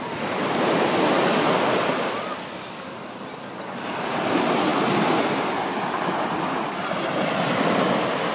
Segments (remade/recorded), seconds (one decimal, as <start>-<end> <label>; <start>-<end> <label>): 0.0-8.3 recorded